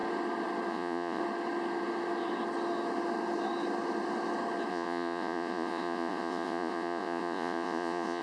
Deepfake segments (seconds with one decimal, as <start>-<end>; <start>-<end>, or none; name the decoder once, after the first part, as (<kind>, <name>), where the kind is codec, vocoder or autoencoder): 0.7-1.2 (vocoder, Vocos); 4.7-8.2